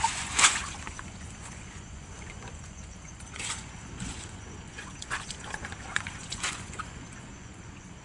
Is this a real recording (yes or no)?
no